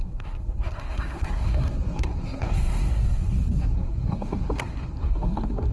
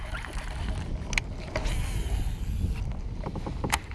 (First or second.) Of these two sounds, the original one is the second